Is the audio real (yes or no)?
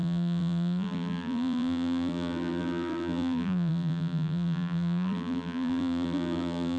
no